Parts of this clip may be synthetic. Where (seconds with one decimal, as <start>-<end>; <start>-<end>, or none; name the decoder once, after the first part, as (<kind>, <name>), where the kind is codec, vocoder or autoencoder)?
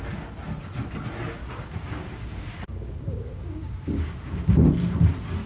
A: 1.4-4.7 (codec, DAC)